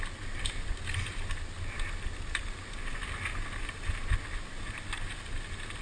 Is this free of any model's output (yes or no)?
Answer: yes